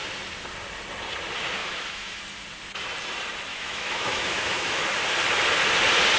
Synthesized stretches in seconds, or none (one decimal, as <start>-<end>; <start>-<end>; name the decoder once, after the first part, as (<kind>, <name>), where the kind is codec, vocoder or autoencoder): 1.6-2.2 (autoencoder, DAC-VAE); 3.5-4.8